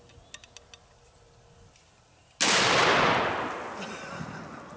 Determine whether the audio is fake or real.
real